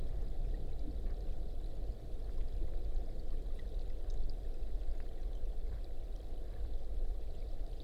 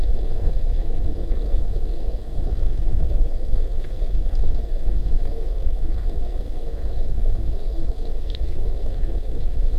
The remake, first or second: second